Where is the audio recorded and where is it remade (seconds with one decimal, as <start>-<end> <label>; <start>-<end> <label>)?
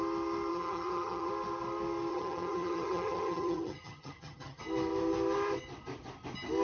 0.0-0.5 recorded; 0.5-1.3 remade; 1.3-2.1 recorded; 2.1-4.6 remade; 4.6-6.6 recorded